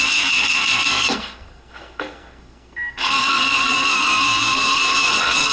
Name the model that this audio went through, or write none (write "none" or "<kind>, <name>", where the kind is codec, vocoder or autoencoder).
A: codec, SNAC